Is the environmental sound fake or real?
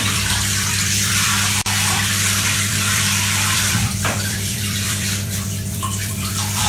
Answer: fake